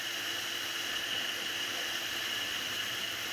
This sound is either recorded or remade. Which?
recorded